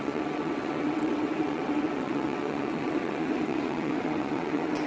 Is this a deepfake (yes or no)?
yes